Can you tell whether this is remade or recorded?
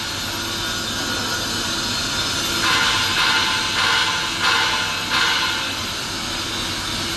recorded